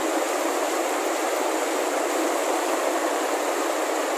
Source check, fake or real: real